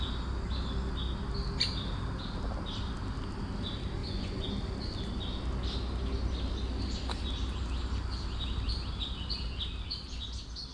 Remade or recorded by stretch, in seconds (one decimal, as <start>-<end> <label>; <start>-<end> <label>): 0.0-4.0 recorded; 4.0-4.5 remade; 4.5-10.7 recorded